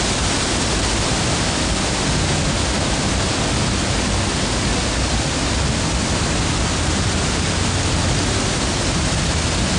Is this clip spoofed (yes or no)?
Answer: no